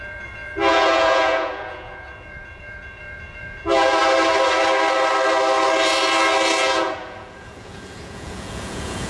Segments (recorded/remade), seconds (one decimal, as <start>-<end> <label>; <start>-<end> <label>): 0.0-4.0 remade; 4.0-6.6 recorded; 6.6-9.1 remade